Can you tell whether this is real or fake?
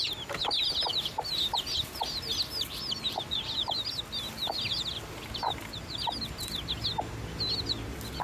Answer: real